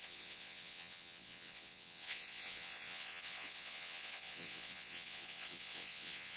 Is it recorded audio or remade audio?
remade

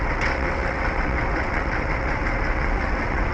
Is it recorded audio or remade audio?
remade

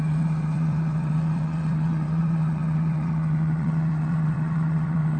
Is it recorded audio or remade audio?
remade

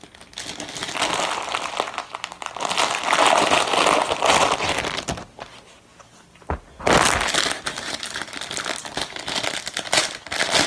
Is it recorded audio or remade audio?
recorded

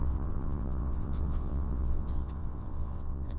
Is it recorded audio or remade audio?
remade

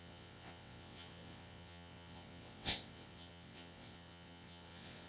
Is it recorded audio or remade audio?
remade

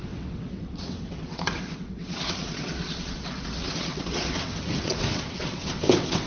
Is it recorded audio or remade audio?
remade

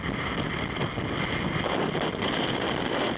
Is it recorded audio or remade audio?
recorded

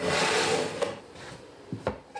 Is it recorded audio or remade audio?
recorded